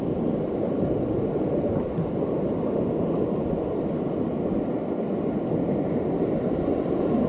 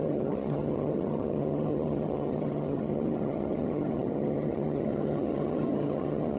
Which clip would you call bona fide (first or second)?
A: first